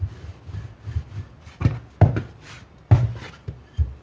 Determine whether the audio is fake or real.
real